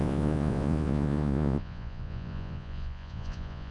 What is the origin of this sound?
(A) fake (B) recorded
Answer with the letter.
A